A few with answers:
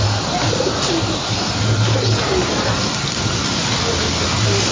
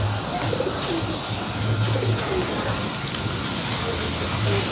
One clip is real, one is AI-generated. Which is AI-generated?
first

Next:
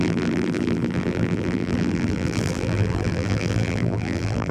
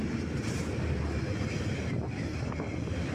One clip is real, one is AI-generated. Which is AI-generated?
first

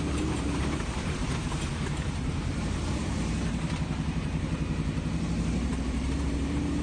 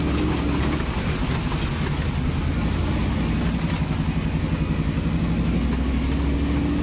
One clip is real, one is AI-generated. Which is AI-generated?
first